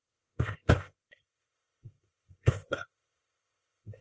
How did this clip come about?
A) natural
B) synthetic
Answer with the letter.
B